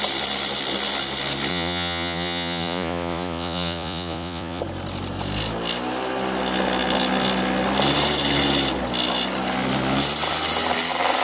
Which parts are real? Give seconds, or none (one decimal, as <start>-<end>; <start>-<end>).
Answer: 0.0-1.5; 4.6-11.2